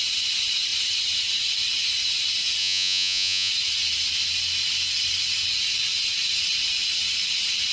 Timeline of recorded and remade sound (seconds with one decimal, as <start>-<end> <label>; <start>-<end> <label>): 0.0-2.6 recorded; 2.6-3.5 remade; 3.5-7.7 recorded